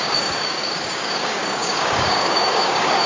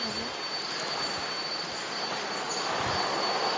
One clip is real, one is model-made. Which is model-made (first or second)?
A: first